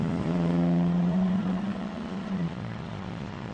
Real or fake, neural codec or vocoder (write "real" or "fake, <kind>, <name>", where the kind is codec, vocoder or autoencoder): fake, vocoder, Vocos